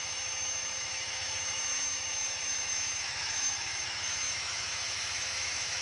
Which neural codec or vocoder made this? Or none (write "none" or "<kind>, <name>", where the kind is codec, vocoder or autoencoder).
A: autoencoder, DAC-VAE